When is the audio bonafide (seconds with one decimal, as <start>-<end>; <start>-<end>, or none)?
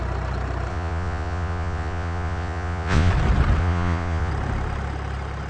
0.0-0.7; 3.1-3.6; 4.3-5.5